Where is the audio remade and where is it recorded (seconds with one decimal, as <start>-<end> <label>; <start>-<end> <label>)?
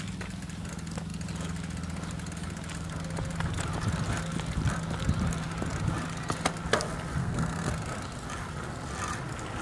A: 0.0-7.2 recorded; 7.2-7.7 remade; 7.7-9.6 recorded